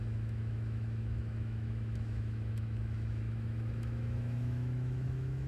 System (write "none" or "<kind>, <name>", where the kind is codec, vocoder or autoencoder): autoencoder, DAC-VAE